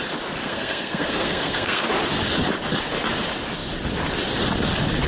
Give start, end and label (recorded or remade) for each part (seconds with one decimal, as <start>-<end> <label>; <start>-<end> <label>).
0.0-0.4 recorded; 0.4-1.9 remade; 1.9-5.1 recorded